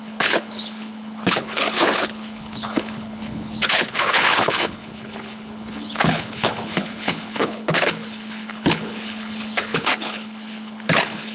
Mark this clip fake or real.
fake